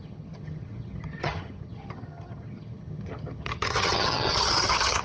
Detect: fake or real fake